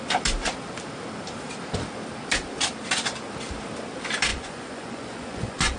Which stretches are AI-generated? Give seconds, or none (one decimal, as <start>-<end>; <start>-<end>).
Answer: 4.3-5.8